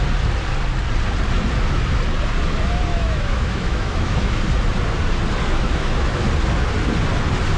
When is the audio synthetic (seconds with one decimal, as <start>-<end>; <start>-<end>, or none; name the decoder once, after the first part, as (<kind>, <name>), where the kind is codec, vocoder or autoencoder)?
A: 2.9-4.4 (autoencoder, DAC-VAE); 5.6-6.2